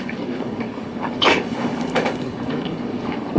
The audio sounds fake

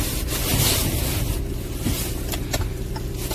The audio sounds real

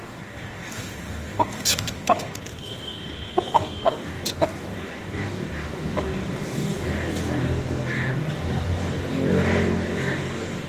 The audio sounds fake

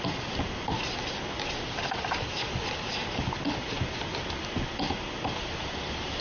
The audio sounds real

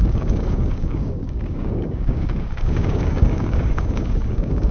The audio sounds fake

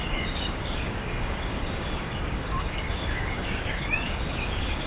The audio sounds fake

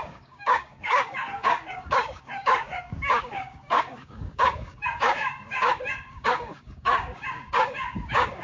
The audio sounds fake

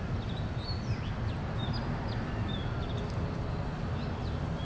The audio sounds real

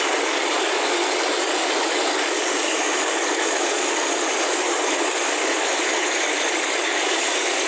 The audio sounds fake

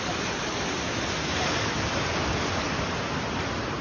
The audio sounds real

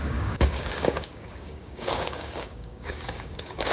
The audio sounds fake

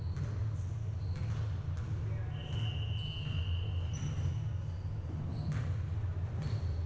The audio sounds real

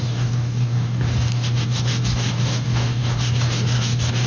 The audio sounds fake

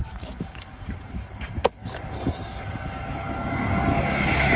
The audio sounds fake